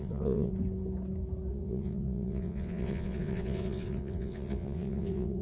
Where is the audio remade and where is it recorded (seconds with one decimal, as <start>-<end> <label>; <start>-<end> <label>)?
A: 0.0-0.5 remade; 0.5-1.5 recorded; 1.5-5.4 remade